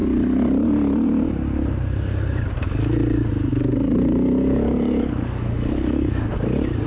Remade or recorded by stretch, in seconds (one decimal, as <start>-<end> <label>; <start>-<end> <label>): 0.0-3.5 recorded; 3.5-6.3 remade; 6.3-6.9 recorded